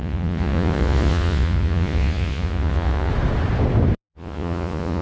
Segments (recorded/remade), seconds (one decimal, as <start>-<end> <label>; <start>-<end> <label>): 0.0-3.1 remade; 3.1-4.1 recorded; 4.1-5.0 remade